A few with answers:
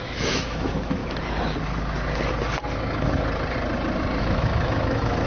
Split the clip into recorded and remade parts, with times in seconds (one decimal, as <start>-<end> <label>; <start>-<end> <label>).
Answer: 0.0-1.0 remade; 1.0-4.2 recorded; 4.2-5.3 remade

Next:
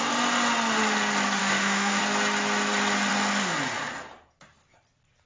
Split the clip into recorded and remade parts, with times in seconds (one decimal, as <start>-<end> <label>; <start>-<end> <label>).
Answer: 0.0-1.4 recorded; 1.4-2.0 remade; 2.0-5.3 recorded

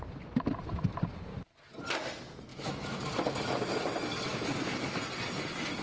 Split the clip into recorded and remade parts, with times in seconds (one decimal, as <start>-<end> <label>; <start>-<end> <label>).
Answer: 0.0-2.5 recorded; 2.5-3.1 remade; 3.1-4.3 recorded; 4.3-4.9 remade; 4.9-5.8 recorded

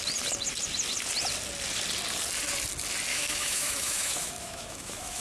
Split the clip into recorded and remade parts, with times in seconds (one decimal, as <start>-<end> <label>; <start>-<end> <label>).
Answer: 0.0-3.1 recorded; 3.1-5.2 remade